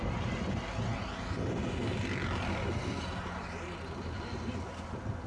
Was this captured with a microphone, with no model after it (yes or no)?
yes